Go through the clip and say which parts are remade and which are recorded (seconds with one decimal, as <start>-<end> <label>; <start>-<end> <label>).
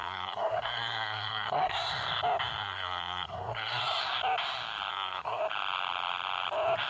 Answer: 0.0-1.9 remade; 1.9-2.6 recorded; 2.6-4.0 remade; 4.0-4.9 recorded; 4.9-5.4 remade; 5.4-6.9 recorded